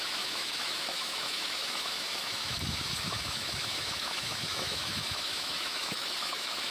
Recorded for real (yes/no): no